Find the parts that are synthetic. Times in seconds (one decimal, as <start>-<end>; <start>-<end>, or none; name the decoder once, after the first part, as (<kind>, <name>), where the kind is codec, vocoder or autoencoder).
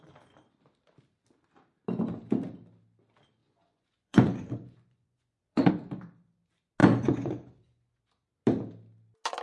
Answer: 3.4-5.7 (vocoder, Vocos); 6.8-8.0